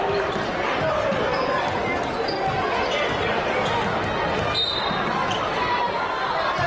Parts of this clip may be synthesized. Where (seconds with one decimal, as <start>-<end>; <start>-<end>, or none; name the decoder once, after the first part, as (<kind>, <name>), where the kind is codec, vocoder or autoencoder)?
1.3-1.9 (vocoder, BigVGAN v2)